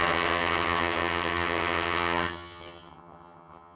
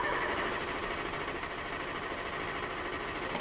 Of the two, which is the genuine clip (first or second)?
second